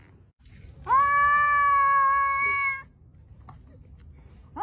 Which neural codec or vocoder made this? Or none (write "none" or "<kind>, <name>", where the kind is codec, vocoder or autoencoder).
none